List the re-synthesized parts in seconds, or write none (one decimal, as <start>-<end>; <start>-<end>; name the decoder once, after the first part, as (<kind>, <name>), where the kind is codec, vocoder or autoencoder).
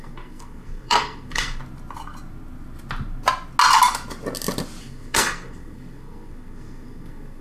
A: 0.0-1.6 (codec, SNAC); 4.8-7.4